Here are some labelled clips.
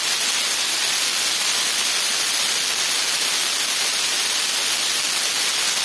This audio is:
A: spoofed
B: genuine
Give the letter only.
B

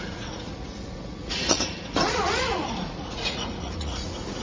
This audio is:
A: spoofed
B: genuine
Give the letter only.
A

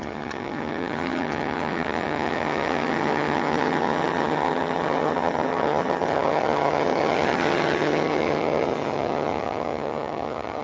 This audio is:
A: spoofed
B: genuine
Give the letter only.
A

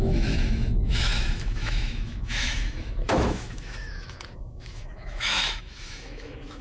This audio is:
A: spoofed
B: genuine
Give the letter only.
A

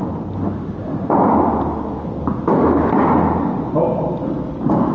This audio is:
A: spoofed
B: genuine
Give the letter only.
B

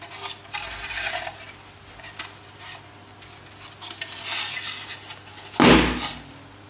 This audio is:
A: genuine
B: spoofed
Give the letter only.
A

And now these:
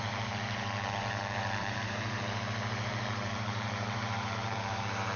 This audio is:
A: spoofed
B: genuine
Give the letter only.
A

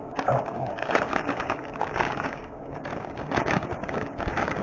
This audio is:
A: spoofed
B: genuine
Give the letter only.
A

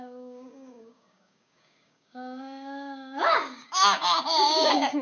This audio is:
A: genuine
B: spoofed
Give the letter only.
B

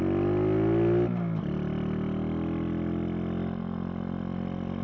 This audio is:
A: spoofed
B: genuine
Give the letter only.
B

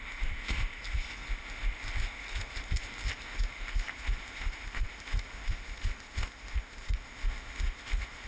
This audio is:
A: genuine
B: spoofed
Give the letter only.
B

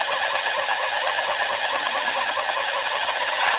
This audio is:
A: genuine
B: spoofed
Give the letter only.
B